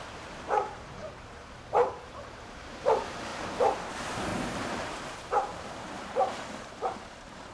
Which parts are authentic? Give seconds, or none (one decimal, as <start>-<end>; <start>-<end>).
none